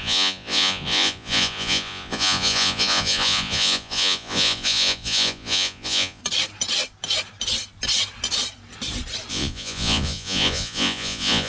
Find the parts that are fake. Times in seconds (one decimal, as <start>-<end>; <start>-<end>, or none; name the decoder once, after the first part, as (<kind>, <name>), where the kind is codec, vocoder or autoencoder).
0.0-6.2 (vocoder, Vocos); 9.3-11.5